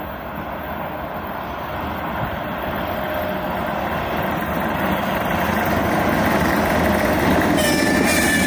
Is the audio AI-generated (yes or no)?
no